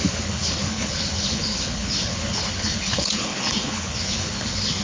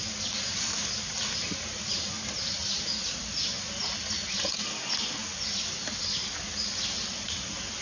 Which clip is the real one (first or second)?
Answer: second